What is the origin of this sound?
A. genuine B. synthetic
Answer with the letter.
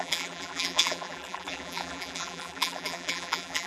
B